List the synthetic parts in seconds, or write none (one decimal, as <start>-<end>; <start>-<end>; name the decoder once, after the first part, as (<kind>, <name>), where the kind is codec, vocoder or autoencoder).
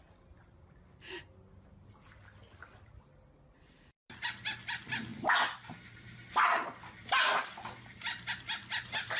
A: none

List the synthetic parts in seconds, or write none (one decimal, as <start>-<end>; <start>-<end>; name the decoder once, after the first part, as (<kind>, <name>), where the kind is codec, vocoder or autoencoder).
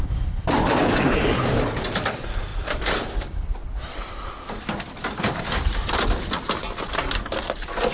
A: 2.5-4.1 (vocoder, BigVGAN v2)